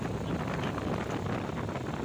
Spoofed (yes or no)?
no